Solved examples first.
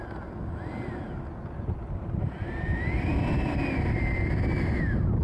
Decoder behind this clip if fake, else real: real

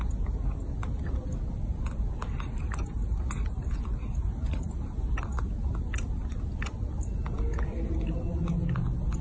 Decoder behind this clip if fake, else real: real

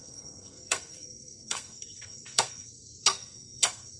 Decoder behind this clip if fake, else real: fake, codec, SNAC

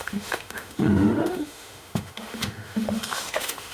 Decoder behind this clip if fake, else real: fake, autoencoder, DAC-VAE